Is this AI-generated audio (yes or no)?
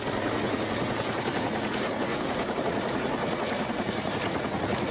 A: yes